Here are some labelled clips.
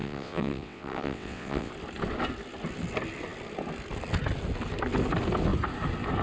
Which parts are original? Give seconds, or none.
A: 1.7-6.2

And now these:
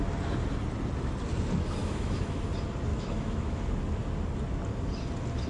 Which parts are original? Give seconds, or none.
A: 0.0-1.8; 2.4-2.9; 3.6-5.5

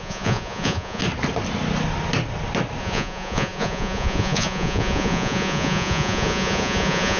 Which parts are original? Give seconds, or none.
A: 1.0-2.8

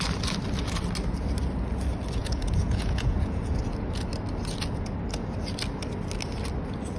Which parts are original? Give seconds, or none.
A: 0.0-2.2; 3.6-7.0